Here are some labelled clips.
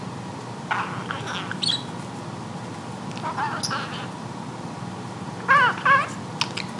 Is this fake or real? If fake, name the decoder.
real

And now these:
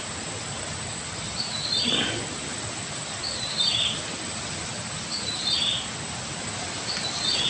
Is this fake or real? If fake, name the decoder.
real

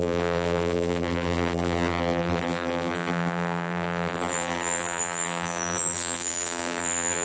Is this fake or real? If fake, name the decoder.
fake, vocoder, BigVGAN v2